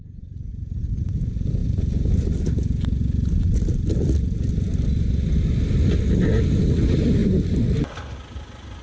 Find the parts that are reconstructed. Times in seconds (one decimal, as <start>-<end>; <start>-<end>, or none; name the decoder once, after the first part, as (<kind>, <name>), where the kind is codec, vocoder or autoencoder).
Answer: none